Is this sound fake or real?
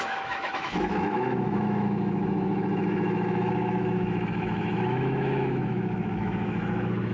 fake